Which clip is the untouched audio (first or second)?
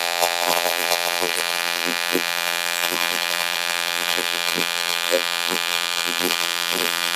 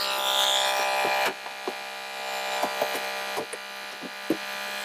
second